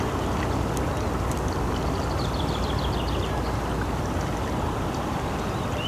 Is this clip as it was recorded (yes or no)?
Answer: yes